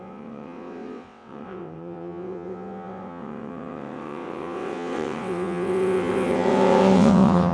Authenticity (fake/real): fake